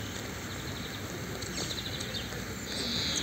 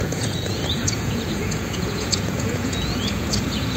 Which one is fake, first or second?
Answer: second